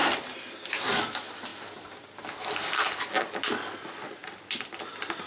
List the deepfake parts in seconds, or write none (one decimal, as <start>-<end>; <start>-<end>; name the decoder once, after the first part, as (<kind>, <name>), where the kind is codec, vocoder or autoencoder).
none